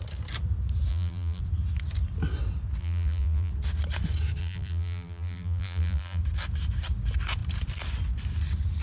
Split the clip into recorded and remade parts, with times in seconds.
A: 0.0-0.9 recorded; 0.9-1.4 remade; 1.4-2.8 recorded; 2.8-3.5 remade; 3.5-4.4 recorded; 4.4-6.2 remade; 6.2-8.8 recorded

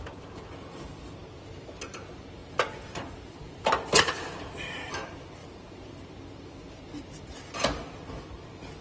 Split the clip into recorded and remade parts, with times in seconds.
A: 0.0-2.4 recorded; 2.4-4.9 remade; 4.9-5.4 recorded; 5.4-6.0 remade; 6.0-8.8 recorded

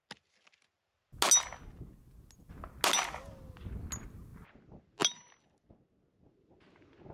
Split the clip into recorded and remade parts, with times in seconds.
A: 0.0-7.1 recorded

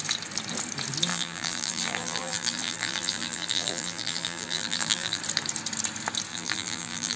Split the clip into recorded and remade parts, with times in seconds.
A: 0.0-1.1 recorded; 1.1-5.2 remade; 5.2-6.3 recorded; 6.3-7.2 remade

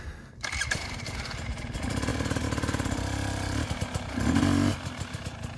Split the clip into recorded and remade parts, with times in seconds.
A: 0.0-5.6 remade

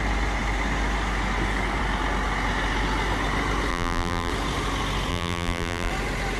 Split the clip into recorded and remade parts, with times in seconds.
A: 0.0-3.7 recorded; 3.7-4.3 remade; 4.3-5.1 recorded; 5.1-5.9 remade; 5.9-6.4 recorded

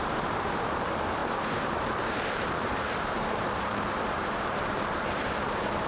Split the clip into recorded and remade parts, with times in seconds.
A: 0.0-5.9 remade

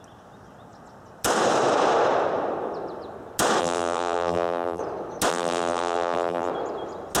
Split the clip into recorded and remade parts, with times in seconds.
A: 0.0-3.6 recorded; 3.6-4.8 remade; 4.8-5.3 recorded; 5.3-6.5 remade; 6.5-7.2 recorded